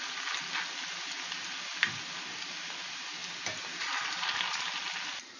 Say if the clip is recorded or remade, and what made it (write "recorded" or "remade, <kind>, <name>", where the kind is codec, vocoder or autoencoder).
recorded